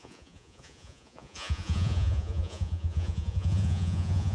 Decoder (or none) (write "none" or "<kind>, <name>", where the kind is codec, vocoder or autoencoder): vocoder, Vocos